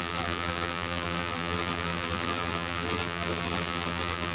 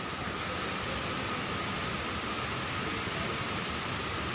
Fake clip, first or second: first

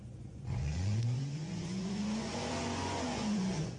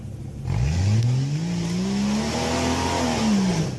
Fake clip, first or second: first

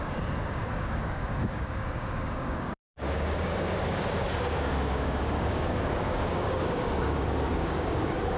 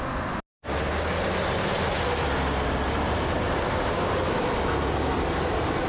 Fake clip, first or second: first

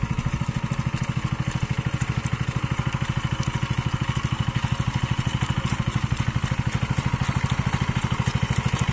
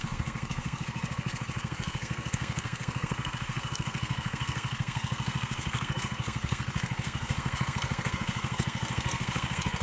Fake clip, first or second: second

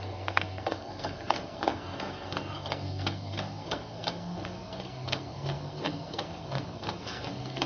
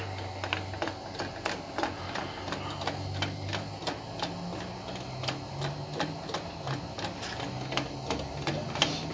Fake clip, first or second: first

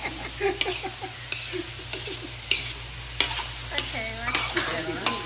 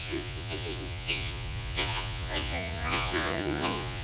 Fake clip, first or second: second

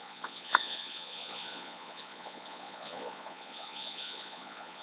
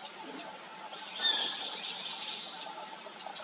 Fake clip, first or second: first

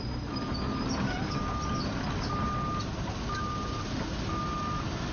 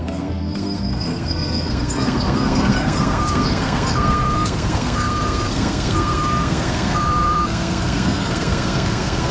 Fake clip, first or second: second